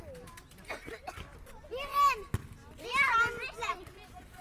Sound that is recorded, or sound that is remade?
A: recorded